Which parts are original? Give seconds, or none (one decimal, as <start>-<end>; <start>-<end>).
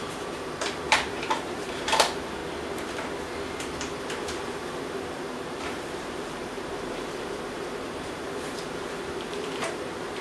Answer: 2.4-3.2